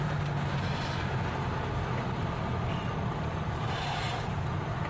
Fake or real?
real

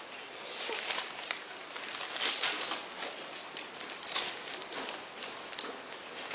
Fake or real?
real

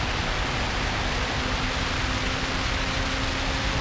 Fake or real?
real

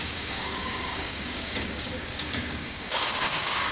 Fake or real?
fake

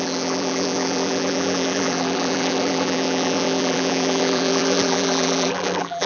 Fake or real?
fake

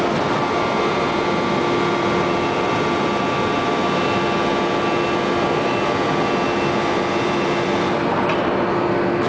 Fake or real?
real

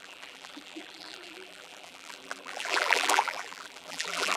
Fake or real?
fake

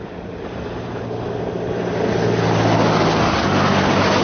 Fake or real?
real